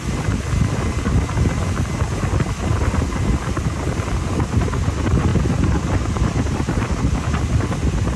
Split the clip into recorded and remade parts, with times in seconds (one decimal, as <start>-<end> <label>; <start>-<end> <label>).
0.0-8.2 recorded